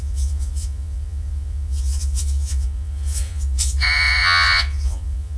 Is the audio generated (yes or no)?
yes